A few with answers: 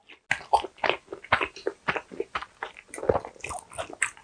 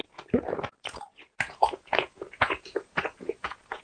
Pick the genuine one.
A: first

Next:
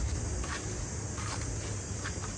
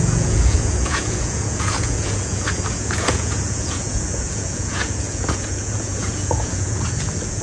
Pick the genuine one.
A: first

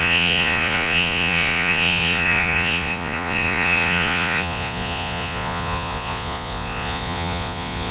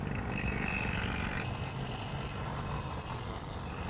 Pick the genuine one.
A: second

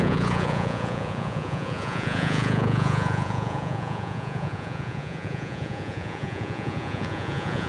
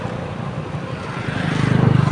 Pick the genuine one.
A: second